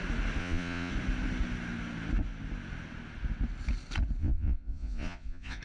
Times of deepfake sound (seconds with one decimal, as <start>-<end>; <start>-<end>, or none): 0.4-0.9; 4.2-5.6